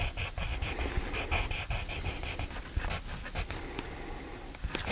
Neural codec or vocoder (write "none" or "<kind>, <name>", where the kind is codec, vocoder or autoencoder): none